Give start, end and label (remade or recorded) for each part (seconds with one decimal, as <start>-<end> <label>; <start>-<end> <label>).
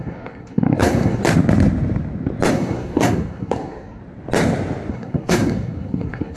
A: 0.0-1.2 remade; 1.2-2.5 recorded; 2.5-4.0 remade; 4.0-4.9 recorded; 4.9-6.4 remade